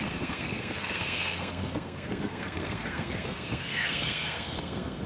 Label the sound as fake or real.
fake